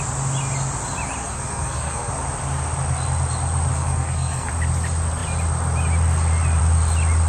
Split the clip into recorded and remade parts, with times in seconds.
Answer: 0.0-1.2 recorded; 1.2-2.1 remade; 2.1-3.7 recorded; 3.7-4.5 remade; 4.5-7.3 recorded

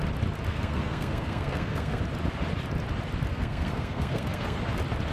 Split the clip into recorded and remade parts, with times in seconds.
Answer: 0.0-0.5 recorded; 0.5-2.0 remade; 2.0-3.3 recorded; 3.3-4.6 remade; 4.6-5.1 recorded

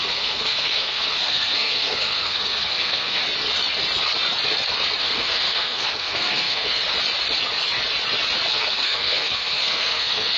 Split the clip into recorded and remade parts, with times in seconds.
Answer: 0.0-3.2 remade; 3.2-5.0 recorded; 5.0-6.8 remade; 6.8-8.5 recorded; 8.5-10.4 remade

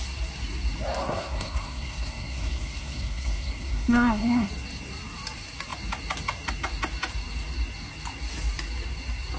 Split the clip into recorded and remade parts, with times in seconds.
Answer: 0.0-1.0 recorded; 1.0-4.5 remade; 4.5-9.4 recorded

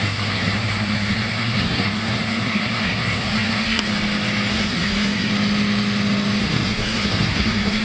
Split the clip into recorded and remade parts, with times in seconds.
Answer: 0.0-3.9 remade; 3.9-4.5 recorded; 4.5-5.3 remade; 5.3-6.4 recorded; 6.4-7.8 remade

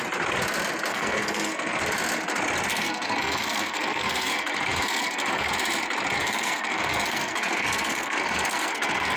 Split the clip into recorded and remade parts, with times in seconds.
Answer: 0.0-0.9 recorded; 0.9-1.8 remade; 1.8-2.7 recorded; 2.7-5.5 remade; 5.5-6.2 recorded; 6.2-9.2 remade

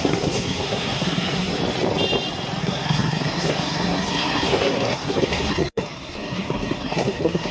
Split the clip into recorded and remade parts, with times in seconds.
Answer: 0.0-1.6 remade; 1.6-2.6 recorded; 2.6-7.5 remade

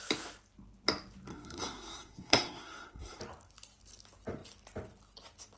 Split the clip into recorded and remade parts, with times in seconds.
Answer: 0.0-1.3 recorded; 1.3-3.2 remade; 3.2-5.6 recorded